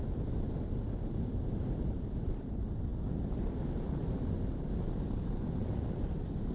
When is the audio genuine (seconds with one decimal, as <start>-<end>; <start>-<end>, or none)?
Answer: 0.0-6.5